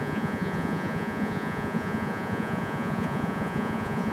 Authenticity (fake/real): fake